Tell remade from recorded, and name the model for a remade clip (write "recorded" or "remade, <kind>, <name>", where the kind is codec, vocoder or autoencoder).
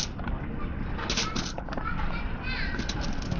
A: recorded